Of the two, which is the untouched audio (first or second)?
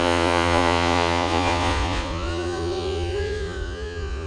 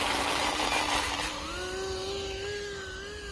second